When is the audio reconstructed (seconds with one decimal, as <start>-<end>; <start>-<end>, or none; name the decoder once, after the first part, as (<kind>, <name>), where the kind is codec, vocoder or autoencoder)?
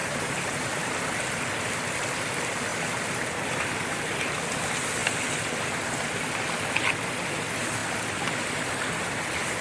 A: 0.0-1.0 (vocoder, BigVGAN v2); 2.7-4.4